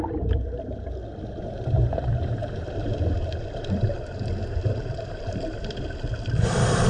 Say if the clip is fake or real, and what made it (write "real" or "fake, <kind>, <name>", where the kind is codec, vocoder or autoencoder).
fake, vocoder, BigVGAN v2